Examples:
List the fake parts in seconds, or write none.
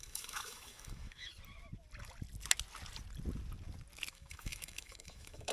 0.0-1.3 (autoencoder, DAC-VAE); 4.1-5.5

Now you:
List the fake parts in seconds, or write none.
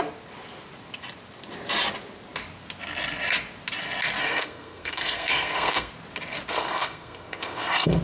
4.2-5.9 (codec, SNAC); 6.5-8.0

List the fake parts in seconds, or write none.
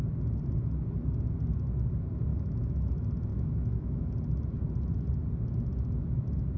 2.3-2.9 (autoencoder, DAC-VAE); 3.3-4.1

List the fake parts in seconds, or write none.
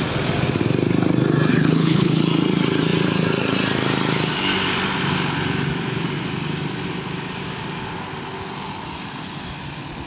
1.5-2.2 (codec, HILCodec)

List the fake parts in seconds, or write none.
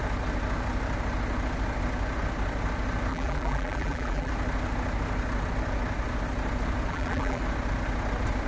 3.1-4.3 (vocoder, BigVGAN v2); 6.9-7.4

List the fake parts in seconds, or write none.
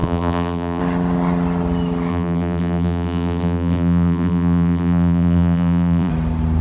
0.0-0.8 (vocoder, BigVGAN v2); 2.1-6.1